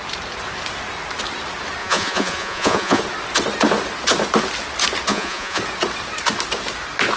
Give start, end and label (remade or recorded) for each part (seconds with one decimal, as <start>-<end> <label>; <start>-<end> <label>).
0.0-1.8 recorded; 1.8-3.0 remade; 3.0-5.1 recorded; 5.1-5.6 remade; 5.6-7.2 recorded